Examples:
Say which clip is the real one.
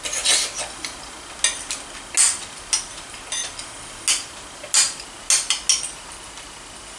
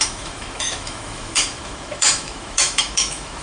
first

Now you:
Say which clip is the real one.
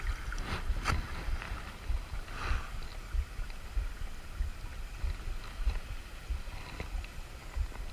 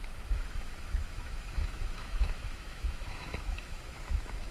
first